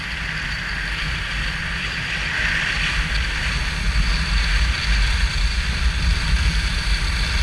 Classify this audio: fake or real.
real